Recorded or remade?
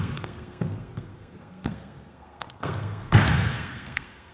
remade